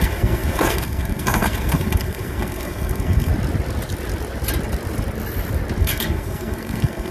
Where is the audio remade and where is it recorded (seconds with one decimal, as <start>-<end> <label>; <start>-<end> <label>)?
0.0-3.3 remade; 3.3-5.8 recorded; 5.8-7.1 remade